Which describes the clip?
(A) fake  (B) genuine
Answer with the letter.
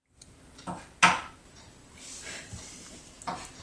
B